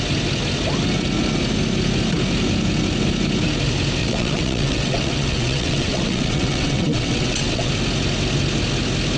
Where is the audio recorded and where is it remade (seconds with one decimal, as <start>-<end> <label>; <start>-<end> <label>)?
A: 0.0-4.0 recorded; 4.0-7.7 remade; 7.7-9.2 recorded